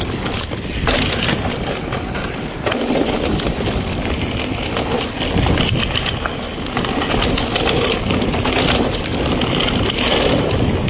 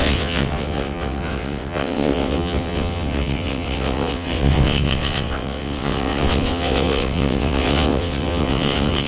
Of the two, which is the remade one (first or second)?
second